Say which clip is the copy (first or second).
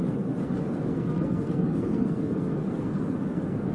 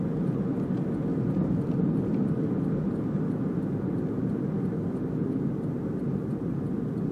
first